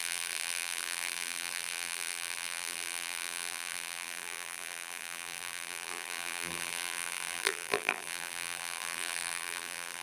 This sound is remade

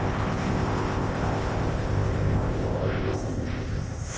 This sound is remade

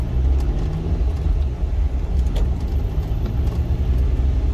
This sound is recorded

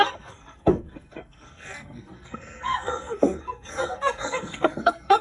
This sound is remade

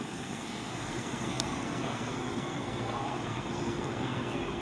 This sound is remade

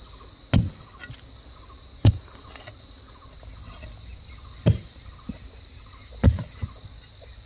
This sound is recorded